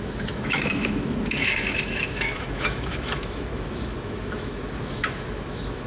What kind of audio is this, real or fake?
fake